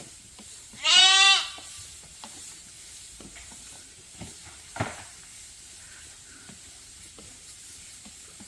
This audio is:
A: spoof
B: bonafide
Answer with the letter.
A